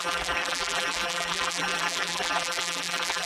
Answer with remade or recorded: remade